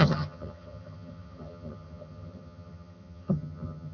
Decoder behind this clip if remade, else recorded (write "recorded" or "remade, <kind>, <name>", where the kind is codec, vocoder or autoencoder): remade, vocoder, HiFi-GAN